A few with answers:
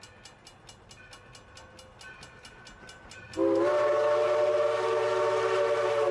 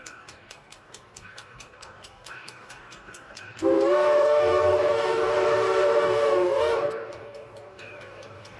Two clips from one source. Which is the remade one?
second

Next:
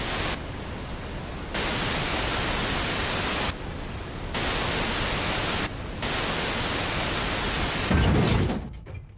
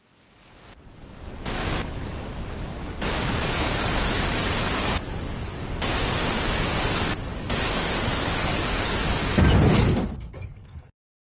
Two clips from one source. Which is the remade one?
second